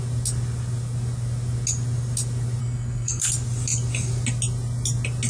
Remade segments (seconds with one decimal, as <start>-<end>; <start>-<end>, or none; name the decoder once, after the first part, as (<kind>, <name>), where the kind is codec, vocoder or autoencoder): 2.6-3.2 (codec, SNAC)